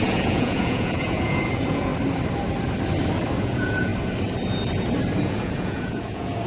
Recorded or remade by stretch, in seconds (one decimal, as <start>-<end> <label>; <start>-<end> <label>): 0.0-1.9 remade; 1.9-3.4 recorded; 3.4-3.9 remade; 3.9-5.2 recorded; 5.2-6.5 remade